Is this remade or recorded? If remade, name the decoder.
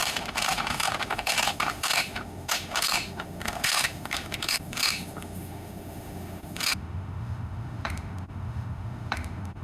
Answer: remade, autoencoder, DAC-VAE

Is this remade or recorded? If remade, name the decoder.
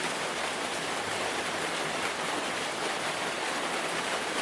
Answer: remade, vocoder, BigVGAN v2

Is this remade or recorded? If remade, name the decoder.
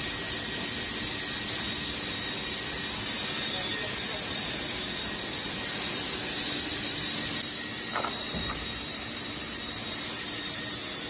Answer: remade, vocoder, BigVGAN v2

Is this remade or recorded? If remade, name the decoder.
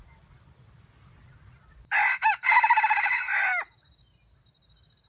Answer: recorded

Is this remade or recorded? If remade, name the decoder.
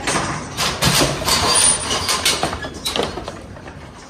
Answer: remade, vocoder, BigVGAN v2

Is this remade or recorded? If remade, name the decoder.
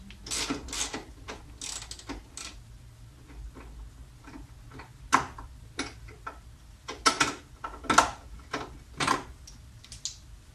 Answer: recorded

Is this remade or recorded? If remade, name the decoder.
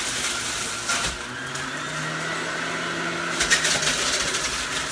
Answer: recorded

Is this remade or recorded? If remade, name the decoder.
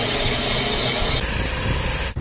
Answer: recorded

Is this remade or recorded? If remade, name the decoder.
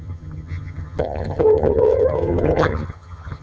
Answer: remade, vocoder, HiFi-GAN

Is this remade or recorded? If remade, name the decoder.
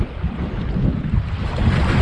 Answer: recorded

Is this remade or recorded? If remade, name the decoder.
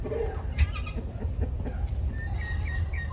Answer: recorded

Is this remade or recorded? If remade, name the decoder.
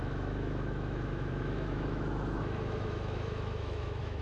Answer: remade, autoencoder, DAC-VAE